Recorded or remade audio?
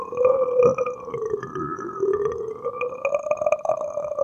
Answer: remade